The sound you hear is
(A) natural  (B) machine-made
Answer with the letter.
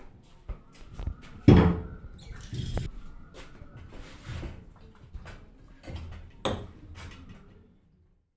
A